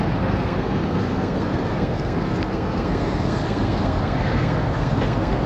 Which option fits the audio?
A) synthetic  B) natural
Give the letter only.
A